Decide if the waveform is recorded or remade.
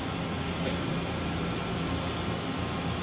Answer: recorded